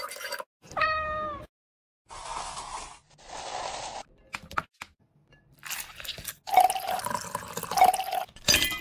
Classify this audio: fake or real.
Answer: real